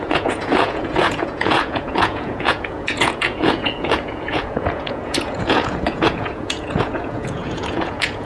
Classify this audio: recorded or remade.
remade